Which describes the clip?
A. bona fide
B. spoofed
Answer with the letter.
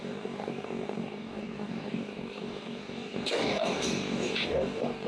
B